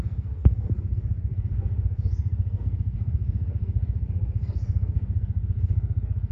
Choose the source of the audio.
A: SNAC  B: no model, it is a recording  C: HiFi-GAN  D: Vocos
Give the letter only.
A